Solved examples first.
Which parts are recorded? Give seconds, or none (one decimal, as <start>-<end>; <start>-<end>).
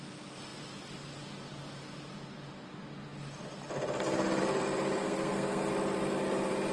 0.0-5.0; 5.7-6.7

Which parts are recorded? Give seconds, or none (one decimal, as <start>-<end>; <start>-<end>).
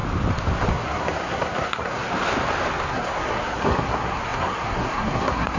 0.0-0.7; 2.1-2.9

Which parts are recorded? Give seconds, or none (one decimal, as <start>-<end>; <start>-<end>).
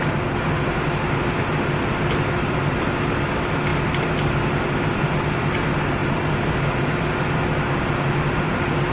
0.0-8.9